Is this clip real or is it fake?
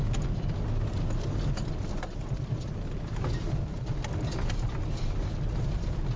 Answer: real